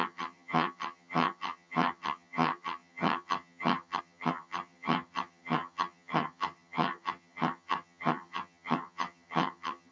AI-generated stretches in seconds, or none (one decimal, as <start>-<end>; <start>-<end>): 0.0-9.9